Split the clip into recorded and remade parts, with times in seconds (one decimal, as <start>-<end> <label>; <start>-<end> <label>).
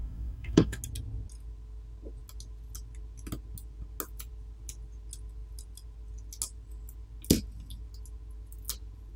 0.0-0.8 remade; 0.8-9.2 recorded